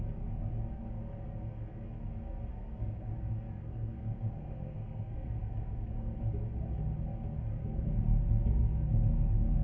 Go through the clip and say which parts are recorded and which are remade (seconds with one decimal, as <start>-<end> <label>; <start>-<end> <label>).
0.0-2.5 recorded; 2.5-3.1 remade; 3.1-3.6 recorded; 3.6-6.2 remade; 6.2-7.6 recorded; 7.6-8.2 remade; 8.2-9.6 recorded